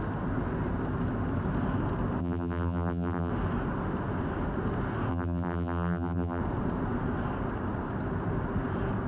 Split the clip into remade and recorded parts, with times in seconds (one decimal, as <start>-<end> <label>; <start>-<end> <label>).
0.0-2.2 recorded; 2.2-3.3 remade; 3.3-5.1 recorded; 5.1-6.4 remade; 6.4-9.1 recorded